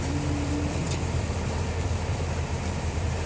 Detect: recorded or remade recorded